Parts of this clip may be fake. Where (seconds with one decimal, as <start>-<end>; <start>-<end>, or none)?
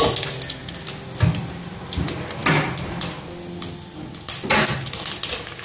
none